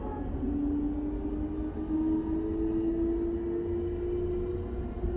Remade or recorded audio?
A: recorded